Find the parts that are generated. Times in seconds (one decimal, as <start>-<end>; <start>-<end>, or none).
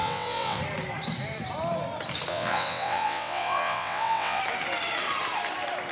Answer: 0.0-0.6; 2.3-4.4